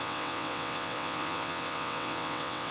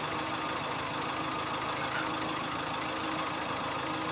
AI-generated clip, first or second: first